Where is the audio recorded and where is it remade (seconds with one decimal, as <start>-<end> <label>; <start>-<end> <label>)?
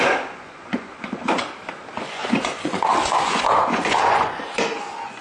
0.0-1.2 remade; 1.2-2.0 recorded; 2.0-5.2 remade